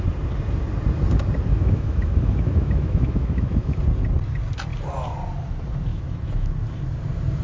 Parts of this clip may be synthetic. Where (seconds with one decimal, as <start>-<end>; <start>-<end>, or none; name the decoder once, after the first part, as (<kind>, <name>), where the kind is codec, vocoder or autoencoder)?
1.5-3.8 (autoencoder, DAC-VAE); 5.9-6.5